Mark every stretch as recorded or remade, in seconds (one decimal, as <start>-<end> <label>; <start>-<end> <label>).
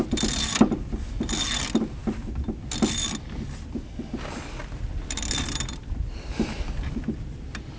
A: 0.0-7.8 recorded